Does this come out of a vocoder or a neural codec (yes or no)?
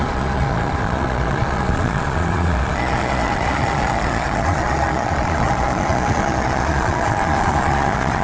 yes